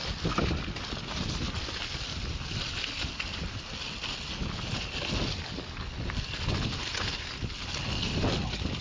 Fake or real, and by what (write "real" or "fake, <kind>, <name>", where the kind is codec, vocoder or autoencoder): real